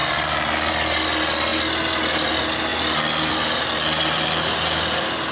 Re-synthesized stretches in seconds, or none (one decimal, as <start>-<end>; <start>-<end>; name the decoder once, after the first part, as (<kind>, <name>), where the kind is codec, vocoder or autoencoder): none